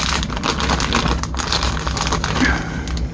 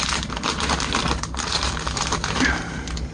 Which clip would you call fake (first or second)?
second